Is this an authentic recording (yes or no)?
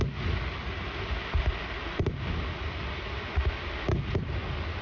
yes